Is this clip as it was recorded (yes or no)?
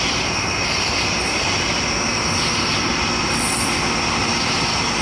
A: yes